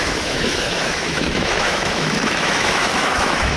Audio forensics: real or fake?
fake